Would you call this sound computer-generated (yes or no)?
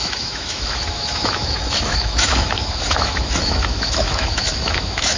yes